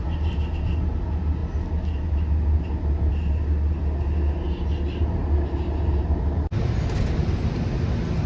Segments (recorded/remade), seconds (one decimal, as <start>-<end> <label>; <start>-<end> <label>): 0.0-8.3 recorded